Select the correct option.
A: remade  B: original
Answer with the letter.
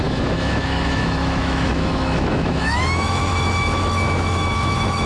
A